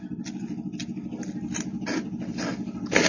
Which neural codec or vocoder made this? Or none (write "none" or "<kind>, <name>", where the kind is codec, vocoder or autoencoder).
none